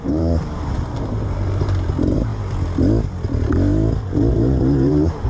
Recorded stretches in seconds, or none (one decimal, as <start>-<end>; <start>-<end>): 2.3-4.3

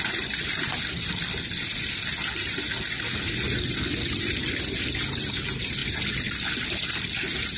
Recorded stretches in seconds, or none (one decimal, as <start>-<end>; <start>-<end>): 0.0-7.6

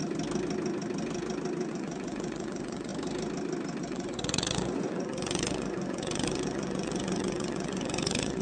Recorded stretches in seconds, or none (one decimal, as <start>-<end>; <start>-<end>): 0.0-1.7; 2.9-3.8

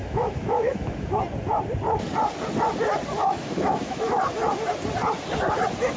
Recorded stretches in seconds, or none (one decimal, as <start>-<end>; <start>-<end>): 1.1-3.2; 4.2-6.0

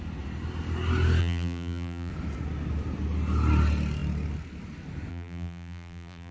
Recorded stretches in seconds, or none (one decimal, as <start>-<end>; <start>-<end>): 0.0-1.2; 2.1-5.1